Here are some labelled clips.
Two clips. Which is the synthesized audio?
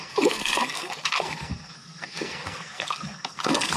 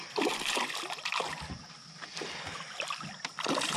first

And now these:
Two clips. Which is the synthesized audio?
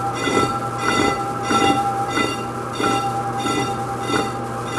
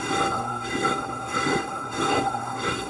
second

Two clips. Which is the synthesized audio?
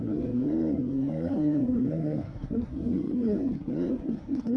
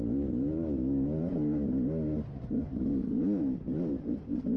first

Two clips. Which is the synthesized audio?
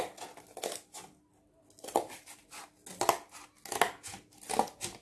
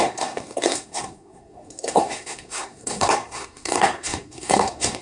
second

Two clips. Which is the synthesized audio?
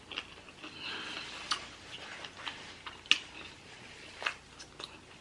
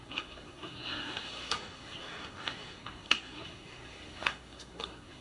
second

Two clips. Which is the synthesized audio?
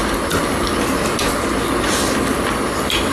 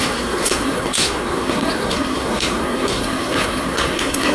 second